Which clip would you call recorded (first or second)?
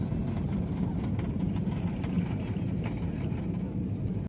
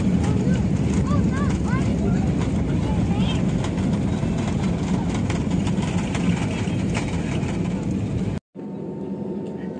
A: second